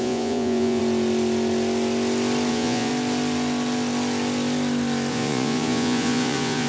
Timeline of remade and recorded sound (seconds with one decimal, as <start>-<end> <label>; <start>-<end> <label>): 0.0-0.8 remade; 0.8-2.5 recorded; 2.5-2.9 remade; 2.9-5.1 recorded; 5.1-6.7 remade